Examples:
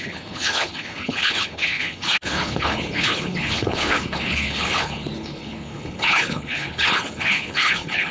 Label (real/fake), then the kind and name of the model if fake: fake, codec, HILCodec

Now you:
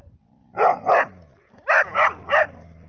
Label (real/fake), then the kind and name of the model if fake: real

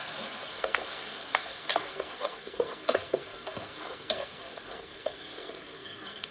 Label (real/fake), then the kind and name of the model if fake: fake, codec, SNAC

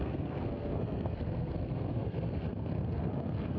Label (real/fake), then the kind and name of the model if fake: fake, codec, SNAC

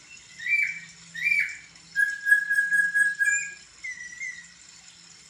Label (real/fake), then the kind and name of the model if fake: real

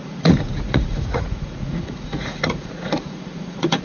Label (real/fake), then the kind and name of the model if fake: fake, vocoder, Vocos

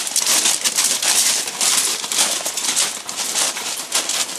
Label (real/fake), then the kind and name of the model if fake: fake, vocoder, BigVGAN v2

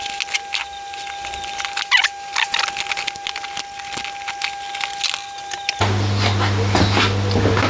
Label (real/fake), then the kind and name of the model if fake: real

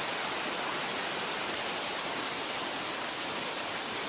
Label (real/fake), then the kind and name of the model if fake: real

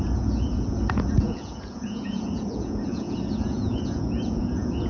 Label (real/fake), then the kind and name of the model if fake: fake, vocoder, Vocos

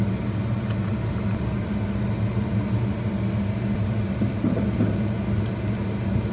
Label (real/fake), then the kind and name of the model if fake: real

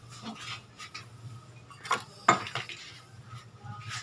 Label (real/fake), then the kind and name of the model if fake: real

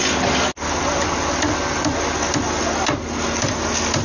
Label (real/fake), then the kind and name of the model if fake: real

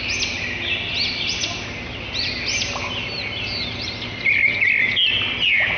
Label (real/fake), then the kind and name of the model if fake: real